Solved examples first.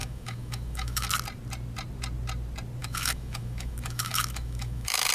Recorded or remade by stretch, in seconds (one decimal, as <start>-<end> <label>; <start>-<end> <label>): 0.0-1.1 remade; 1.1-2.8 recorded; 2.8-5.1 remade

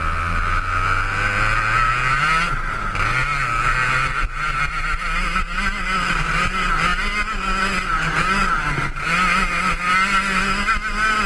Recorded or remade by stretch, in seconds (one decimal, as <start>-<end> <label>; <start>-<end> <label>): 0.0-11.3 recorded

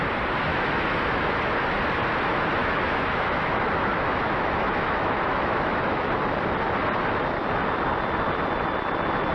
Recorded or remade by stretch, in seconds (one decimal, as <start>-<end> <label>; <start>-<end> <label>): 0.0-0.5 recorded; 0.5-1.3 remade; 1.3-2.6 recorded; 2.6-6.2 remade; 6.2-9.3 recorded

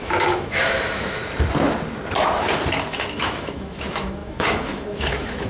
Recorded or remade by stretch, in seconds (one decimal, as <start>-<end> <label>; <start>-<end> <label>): 0.0-1.2 remade; 1.2-2.9 recorded; 2.9-5.5 remade